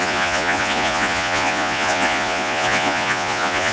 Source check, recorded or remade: remade